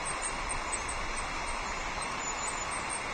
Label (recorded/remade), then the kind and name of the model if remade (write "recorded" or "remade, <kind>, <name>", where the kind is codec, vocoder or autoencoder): recorded